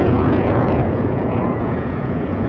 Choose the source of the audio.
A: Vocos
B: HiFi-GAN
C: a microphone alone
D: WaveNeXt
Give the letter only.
A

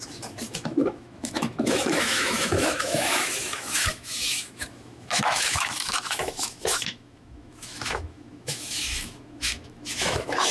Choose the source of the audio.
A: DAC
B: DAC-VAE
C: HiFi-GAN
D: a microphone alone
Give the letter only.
B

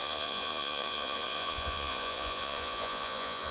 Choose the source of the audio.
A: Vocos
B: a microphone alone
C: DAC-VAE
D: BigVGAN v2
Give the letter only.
A